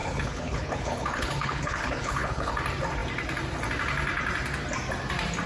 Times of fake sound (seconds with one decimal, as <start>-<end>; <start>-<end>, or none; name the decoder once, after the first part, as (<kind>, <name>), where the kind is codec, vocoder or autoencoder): 0.0-2.5 (codec, HILCodec)